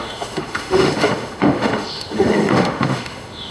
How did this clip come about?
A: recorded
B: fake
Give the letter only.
B